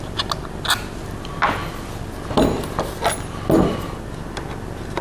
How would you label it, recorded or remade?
recorded